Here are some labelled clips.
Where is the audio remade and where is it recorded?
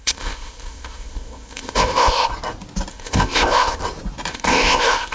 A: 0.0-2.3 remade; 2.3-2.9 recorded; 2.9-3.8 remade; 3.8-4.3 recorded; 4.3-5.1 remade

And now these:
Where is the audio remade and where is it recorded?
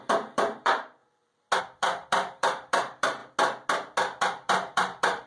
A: 0.0-1.0 remade; 1.0-1.6 recorded; 1.6-3.2 remade; 3.2-4.2 recorded; 4.2-5.3 remade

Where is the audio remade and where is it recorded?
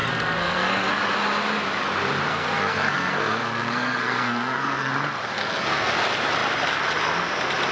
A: 0.0-0.9 remade; 0.9-2.3 recorded; 2.3-4.9 remade; 4.9-5.4 recorded; 5.4-5.9 remade; 5.9-7.7 recorded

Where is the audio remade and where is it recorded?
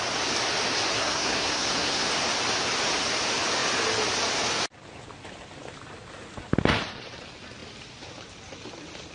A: 0.0-0.9 recorded; 0.9-2.1 remade; 2.1-9.1 recorded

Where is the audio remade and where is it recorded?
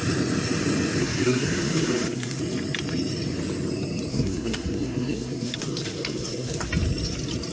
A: 0.0-1.0 recorded; 1.0-2.4 remade; 2.4-4.1 recorded; 4.1-6.7 remade; 6.7-7.5 recorded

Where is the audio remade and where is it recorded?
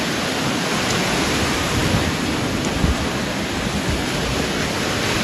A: 0.0-5.2 recorded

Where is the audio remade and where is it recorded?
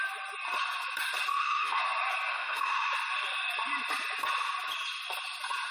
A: 0.0-1.3 recorded; 1.3-1.8 remade; 1.8-2.3 recorded; 2.3-2.9 remade; 2.9-5.7 recorded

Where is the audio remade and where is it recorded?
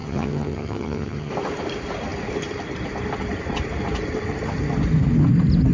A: 0.0-1.3 remade; 1.3-5.7 recorded